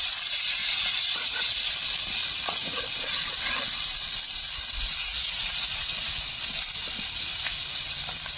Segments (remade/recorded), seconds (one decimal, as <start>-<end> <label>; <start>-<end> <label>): 0.0-0.6 recorded; 0.6-1.6 remade; 1.6-2.2 recorded; 2.2-2.8 remade; 2.8-5.0 recorded; 5.0-6.3 remade; 6.3-8.4 recorded